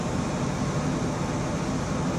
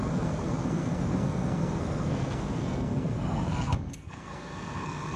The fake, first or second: second